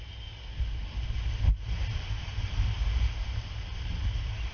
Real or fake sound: real